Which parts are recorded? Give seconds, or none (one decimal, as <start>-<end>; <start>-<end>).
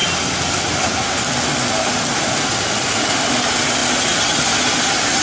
0.0-5.2